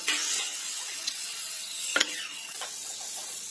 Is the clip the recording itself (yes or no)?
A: no